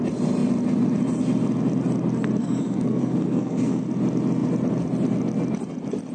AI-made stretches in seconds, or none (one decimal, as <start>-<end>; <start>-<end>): 2.4-3.8